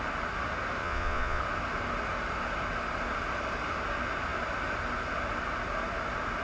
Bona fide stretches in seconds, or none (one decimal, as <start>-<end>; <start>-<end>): 0.0-0.8; 1.4-6.4

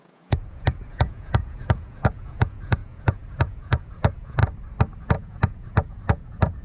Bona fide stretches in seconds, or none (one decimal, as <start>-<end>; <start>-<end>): 4.4-5.0

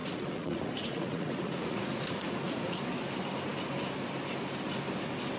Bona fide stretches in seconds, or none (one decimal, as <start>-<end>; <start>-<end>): 2.8-5.4

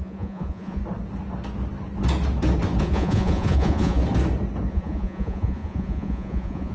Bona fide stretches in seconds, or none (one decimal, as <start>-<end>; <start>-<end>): 0.8-2.8; 4.0-4.7

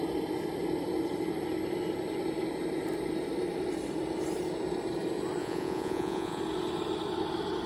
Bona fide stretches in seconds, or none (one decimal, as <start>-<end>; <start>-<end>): 0.0-5.4; 6.4-7.7

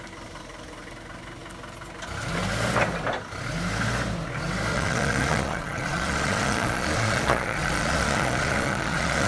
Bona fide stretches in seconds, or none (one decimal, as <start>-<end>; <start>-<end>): 0.0-4.7